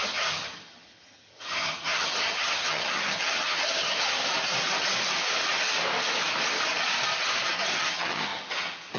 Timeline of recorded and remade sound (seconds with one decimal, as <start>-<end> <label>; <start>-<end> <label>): 0.0-4.2 remade; 4.2-7.7 recorded; 7.7-9.0 remade